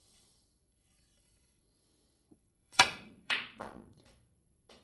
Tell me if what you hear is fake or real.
fake